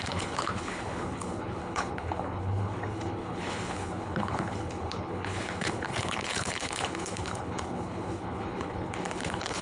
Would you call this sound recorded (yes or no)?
no